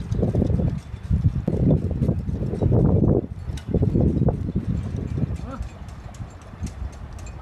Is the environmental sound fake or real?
real